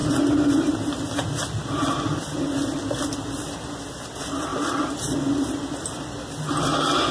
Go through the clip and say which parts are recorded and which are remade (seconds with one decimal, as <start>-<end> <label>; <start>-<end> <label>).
0.0-7.1 recorded